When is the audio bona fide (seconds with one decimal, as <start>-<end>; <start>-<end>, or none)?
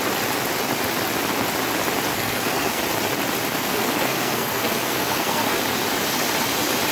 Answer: 0.0-2.1; 2.8-3.5; 5.6-6.9